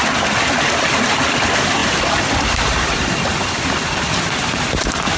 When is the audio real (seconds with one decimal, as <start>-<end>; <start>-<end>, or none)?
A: 0.0-1.8